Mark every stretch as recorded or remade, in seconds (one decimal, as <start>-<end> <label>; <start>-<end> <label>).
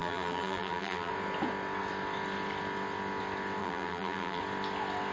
0.0-1.1 remade; 1.1-3.6 recorded; 3.6-4.4 remade; 4.4-5.1 recorded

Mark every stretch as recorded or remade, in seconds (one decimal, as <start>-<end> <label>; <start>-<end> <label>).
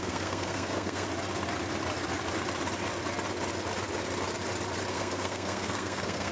0.0-1.1 remade; 1.1-4.9 recorded; 4.9-6.3 remade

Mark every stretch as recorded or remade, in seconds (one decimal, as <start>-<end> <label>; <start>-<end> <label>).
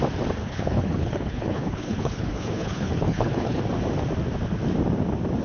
0.0-0.4 recorded; 0.4-3.6 remade; 3.6-5.4 recorded